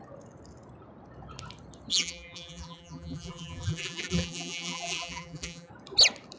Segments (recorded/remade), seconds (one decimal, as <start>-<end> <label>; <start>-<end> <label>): 0.0-1.9 recorded; 1.9-5.7 remade; 5.7-6.4 recorded